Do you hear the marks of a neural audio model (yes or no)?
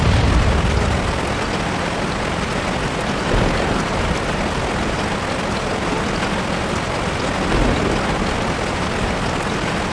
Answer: no